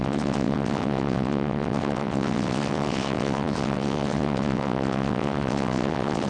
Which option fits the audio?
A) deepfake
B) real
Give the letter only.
A